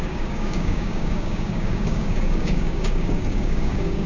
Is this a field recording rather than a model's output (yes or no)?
no